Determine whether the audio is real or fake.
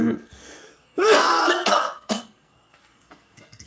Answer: fake